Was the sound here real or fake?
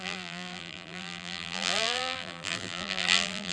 fake